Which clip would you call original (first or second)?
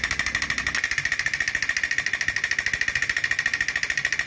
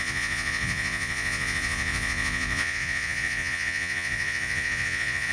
first